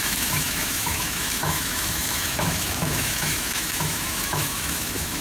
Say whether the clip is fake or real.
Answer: fake